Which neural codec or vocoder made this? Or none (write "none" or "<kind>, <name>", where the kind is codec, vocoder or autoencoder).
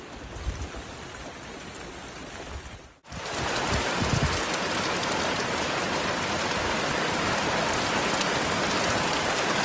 none